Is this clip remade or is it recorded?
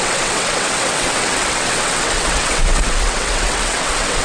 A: remade